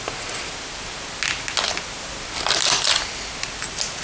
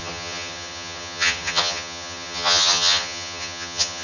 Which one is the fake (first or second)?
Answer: second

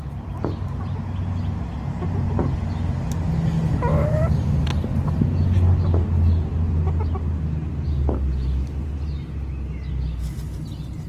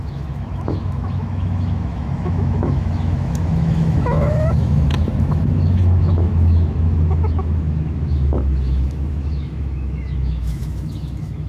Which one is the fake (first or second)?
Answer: second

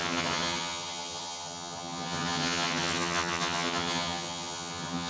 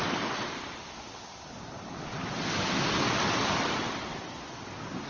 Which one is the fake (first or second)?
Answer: first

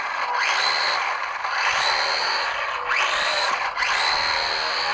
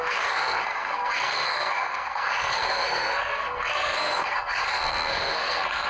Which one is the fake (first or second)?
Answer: second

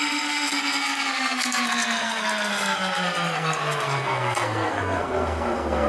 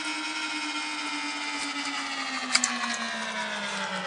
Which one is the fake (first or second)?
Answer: first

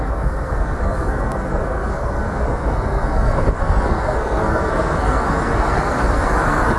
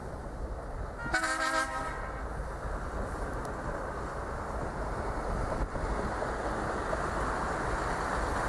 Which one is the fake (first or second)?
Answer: first